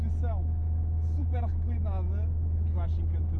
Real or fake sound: real